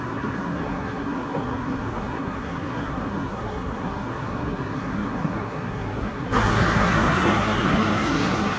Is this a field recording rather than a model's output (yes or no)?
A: no